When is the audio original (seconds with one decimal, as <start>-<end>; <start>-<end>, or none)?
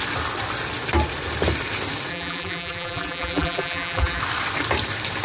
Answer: 0.0-2.1; 4.2-5.2